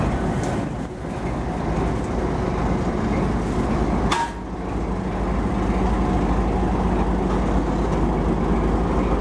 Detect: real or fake real